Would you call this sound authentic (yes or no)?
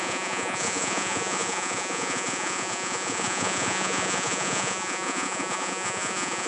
no